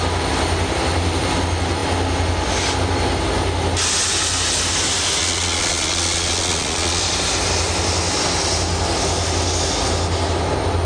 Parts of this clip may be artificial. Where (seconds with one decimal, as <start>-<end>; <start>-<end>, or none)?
5.2-7.0